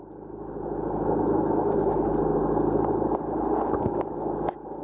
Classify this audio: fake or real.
real